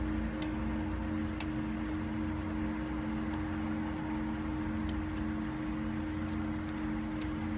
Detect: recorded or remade recorded